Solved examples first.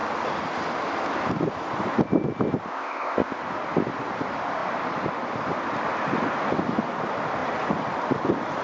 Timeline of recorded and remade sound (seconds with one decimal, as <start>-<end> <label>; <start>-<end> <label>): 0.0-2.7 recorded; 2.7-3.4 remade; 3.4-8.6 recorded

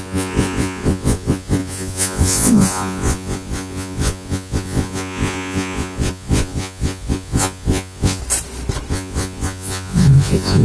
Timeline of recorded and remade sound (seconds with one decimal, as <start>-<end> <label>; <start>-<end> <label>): 0.0-8.2 remade; 8.2-8.9 recorded; 8.9-10.6 remade

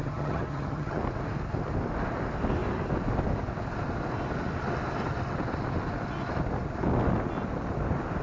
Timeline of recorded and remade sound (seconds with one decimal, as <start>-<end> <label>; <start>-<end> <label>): 0.0-1.0 remade; 1.0-8.2 recorded

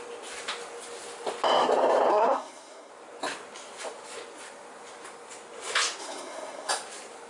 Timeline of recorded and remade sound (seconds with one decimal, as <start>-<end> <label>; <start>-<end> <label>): 0.0-2.1 recorded; 2.1-2.9 remade; 2.9-6.0 recorded; 6.0-6.7 remade; 6.7-7.3 recorded

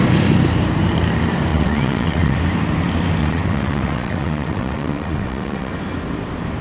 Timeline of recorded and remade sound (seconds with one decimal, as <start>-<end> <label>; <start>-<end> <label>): 0.0-1.5 recorded; 1.5-2.4 remade; 2.4-3.2 recorded; 3.2-5.7 remade; 5.7-6.6 recorded